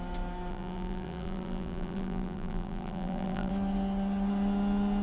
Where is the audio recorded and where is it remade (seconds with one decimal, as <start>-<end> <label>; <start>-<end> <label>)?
0.0-0.5 recorded; 0.5-3.5 remade; 3.5-5.0 recorded